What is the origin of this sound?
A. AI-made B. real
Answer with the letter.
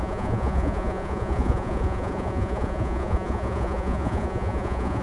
A